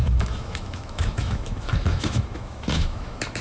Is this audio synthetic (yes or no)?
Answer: yes